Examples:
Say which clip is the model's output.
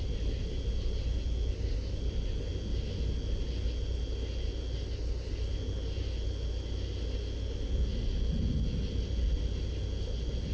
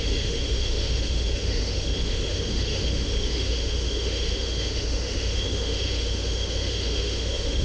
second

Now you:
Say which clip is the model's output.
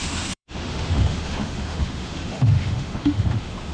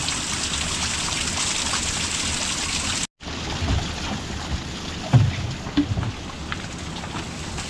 first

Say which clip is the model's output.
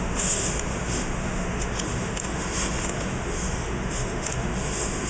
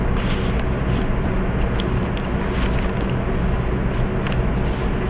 first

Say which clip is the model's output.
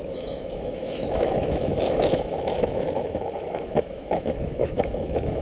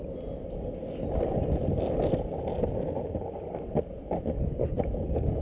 first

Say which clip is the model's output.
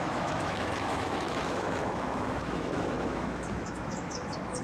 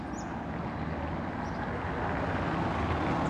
first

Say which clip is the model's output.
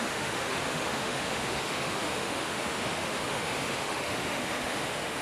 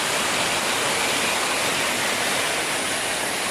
first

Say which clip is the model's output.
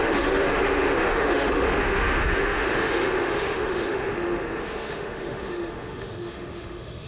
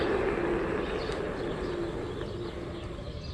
first